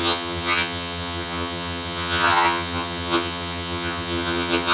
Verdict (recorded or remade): remade